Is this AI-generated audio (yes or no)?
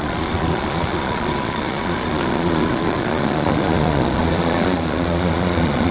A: yes